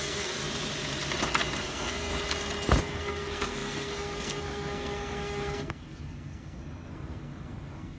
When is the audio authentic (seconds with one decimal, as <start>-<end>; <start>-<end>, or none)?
0.4-1.6; 2.1-2.8